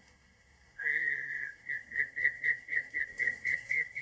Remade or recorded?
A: remade